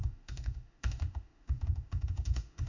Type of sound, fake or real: fake